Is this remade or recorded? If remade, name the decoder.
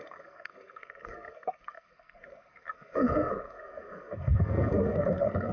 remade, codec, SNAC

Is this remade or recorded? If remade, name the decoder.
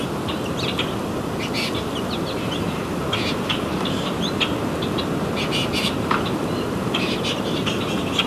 recorded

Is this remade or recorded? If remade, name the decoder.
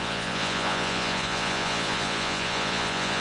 remade, vocoder, Vocos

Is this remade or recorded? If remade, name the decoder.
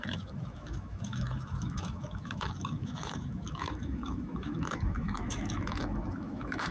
remade, autoencoder, DAC-VAE